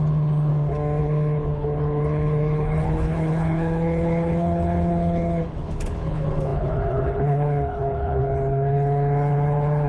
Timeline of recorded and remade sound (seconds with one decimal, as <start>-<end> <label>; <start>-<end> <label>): 0.0-0.5 remade; 0.5-1.0 recorded; 1.0-9.9 remade